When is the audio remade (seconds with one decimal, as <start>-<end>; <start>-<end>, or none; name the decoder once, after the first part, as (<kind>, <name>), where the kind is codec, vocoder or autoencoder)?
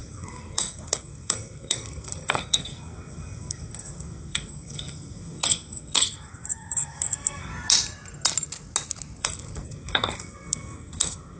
0.0-7.5 (codec, SNAC); 9.2-11.4